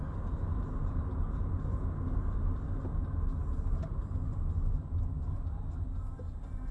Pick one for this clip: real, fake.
real